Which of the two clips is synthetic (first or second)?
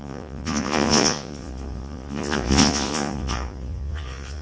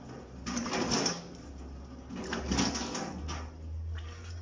first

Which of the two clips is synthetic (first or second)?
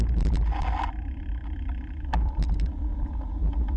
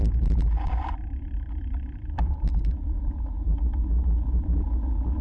second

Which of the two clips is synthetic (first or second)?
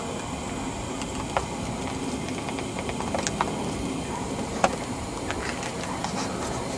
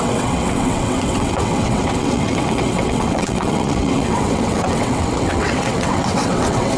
second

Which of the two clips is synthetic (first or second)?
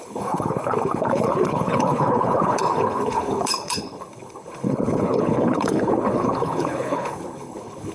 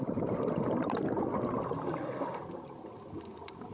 first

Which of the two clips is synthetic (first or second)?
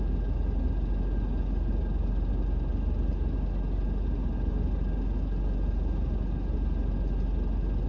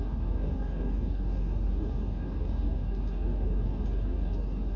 second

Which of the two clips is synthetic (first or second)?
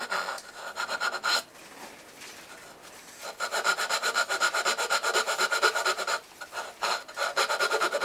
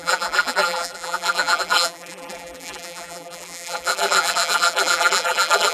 second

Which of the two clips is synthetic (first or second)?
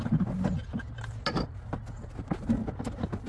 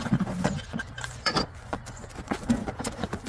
second